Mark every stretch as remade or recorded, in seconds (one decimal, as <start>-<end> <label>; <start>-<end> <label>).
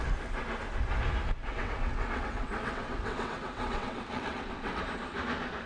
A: 0.0-1.4 recorded; 1.4-4.8 remade; 4.8-5.7 recorded